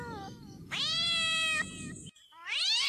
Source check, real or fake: real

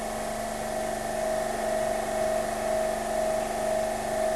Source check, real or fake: real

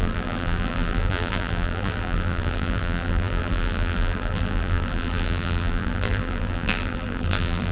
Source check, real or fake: fake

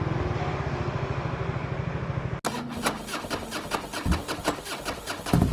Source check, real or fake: real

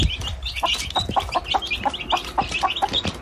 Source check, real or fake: real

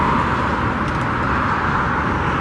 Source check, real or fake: real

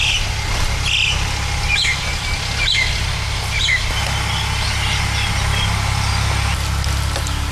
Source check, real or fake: real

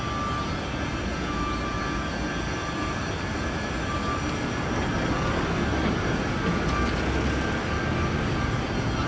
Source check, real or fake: real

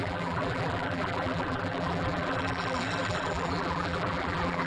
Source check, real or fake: fake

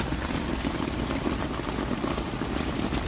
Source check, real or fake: real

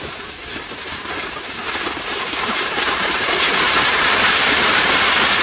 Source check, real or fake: fake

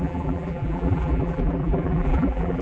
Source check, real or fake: fake